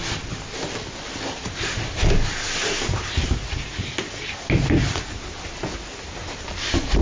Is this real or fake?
real